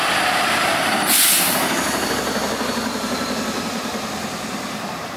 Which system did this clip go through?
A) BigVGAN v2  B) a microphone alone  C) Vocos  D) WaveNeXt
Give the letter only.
A